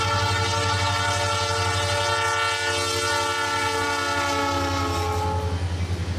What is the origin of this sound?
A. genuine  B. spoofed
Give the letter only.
A